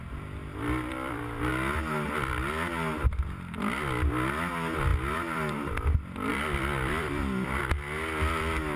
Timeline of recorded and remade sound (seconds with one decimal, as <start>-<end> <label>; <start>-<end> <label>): 0.0-0.4 recorded; 0.4-1.5 remade; 1.5-4.9 recorded; 4.9-5.7 remade; 5.7-6.3 recorded; 6.3-7.6 remade; 7.6-8.8 recorded